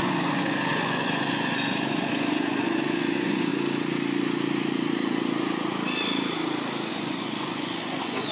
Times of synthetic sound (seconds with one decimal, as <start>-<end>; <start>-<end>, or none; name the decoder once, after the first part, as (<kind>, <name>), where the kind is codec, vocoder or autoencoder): 0.0-3.5 (vocoder, Vocos); 6.9-8.3